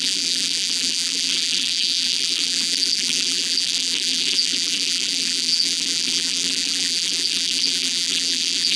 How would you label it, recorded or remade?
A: remade